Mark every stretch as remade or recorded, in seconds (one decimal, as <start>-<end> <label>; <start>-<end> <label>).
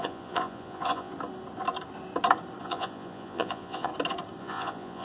0.0-1.1 remade; 1.1-2.6 recorded; 2.6-3.9 remade; 3.9-4.4 recorded; 4.4-5.0 remade